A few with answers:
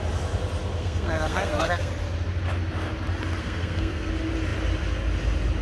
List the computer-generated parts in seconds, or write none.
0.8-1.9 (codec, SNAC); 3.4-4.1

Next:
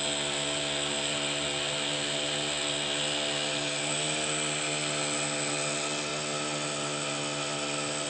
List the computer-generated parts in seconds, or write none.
none

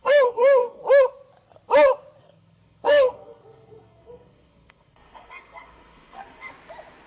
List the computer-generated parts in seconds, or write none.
0.0-0.8 (codec, SNAC); 2.2-6.5

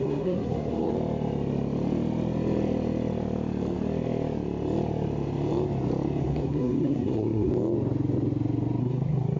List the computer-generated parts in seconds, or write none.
0.0-0.9 (codec, SNAC); 6.2-7.5; 8.8-9.4

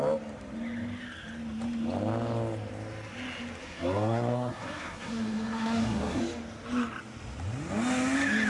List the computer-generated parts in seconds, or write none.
3.6-6.2 (codec, SNAC)

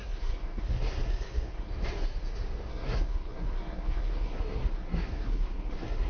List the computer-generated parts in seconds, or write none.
0.0-1.7 (codec, SNAC); 2.7-6.1